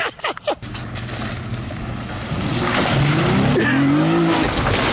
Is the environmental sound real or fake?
real